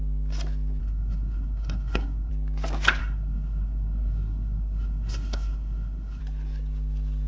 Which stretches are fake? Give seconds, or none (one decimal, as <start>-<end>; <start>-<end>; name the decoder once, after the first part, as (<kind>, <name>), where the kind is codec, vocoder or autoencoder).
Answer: 0.8-2.3 (codec, SNAC); 3.0-6.2